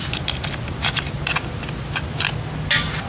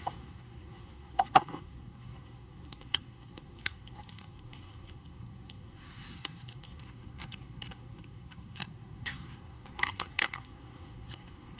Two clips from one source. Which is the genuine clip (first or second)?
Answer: first